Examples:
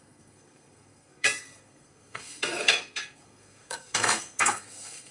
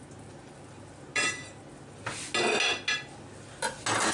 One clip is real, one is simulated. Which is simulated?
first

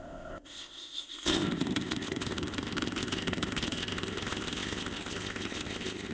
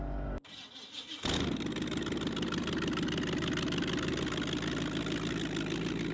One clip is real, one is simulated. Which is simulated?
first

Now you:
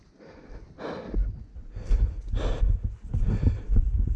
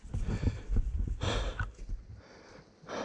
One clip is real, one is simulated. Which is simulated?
second